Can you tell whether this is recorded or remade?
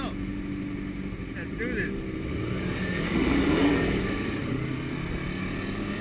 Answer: recorded